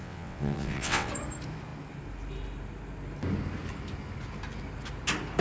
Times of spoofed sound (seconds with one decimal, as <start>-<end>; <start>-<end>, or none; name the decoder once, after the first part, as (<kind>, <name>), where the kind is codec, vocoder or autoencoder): 0.0-1.1 (vocoder, WaveNeXt)